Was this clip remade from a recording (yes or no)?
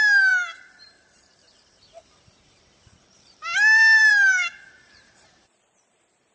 yes